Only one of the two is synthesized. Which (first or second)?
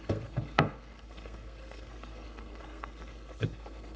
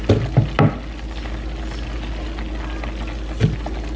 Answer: first